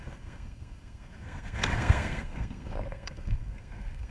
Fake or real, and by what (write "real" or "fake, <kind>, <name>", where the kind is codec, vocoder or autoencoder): fake, codec, SNAC